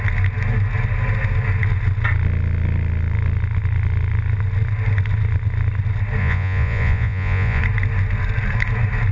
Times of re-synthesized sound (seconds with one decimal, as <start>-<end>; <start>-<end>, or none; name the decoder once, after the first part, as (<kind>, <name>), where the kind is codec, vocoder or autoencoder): 6.2-7.6 (vocoder, Vocos)